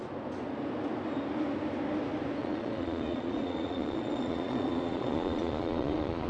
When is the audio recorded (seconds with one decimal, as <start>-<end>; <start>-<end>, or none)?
0.0-2.4